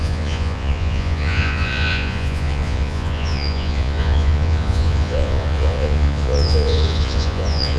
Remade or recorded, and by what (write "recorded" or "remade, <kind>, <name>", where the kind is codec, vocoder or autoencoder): remade, vocoder, Vocos